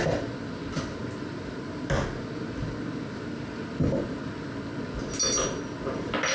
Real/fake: real